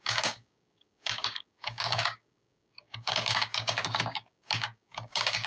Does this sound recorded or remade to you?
remade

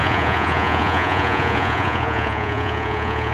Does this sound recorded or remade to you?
remade